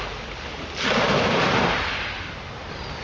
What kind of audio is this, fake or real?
fake